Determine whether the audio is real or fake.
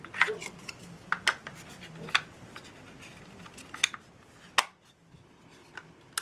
real